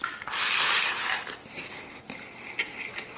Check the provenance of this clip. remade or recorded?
recorded